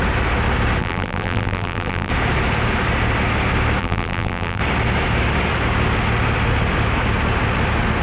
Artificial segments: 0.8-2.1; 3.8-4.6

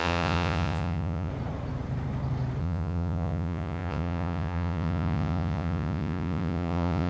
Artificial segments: 0.0-1.3; 2.6-7.1

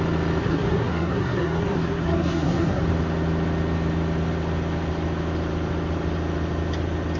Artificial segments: 0.4-2.8

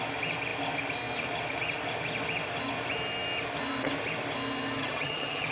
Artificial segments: 4.8-5.5